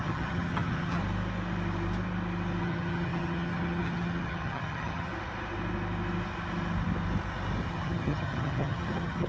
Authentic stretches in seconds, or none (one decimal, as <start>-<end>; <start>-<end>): 1.0-2.6; 5.1-7.7